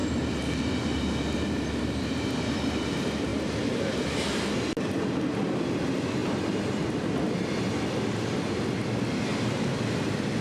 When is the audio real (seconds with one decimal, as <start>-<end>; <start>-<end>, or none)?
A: 0.0-10.4